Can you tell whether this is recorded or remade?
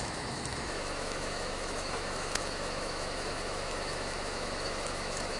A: remade